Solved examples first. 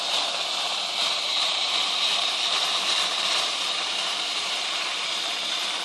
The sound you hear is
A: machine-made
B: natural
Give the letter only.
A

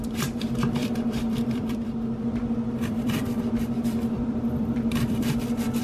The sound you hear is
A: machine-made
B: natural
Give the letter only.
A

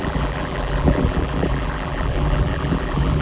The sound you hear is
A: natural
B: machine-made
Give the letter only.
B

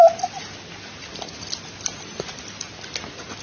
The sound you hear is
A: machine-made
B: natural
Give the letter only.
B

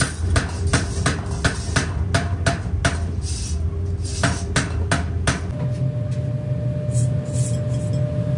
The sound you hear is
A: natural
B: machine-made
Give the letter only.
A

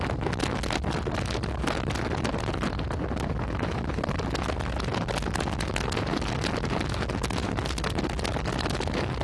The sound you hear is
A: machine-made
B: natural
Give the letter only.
B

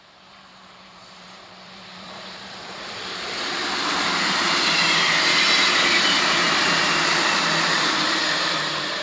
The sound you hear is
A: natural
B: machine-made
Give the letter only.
B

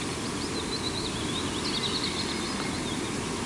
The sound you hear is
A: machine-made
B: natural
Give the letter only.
B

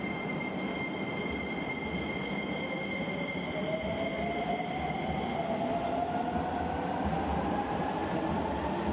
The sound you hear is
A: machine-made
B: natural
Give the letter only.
B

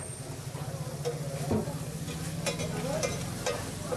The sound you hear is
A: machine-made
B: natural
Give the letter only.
B